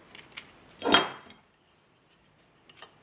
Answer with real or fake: real